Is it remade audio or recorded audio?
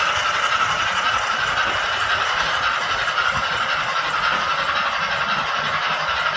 recorded